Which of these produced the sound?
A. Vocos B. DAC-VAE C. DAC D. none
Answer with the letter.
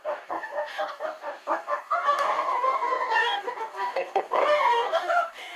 C